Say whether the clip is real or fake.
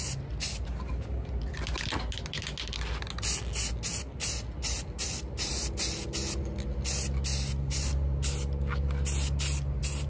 real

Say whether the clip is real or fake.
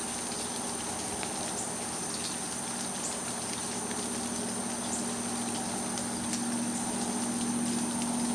real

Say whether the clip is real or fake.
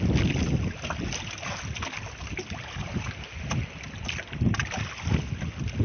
real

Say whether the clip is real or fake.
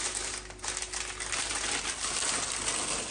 real